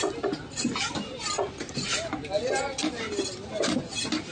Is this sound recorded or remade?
recorded